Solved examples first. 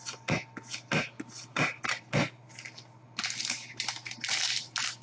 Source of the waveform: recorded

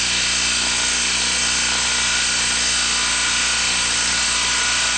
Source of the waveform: recorded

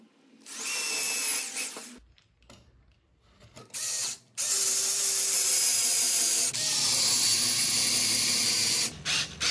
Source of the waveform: recorded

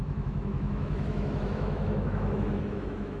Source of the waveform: remade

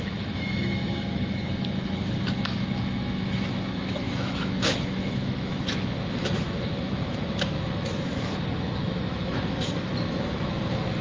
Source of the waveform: remade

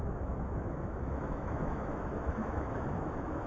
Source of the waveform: remade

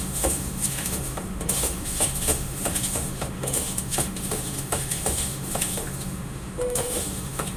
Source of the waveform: remade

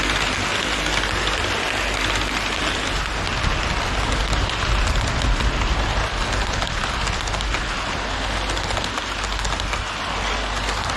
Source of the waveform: recorded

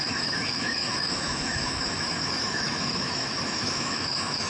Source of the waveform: remade